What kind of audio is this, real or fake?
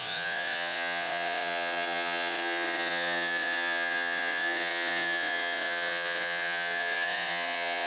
fake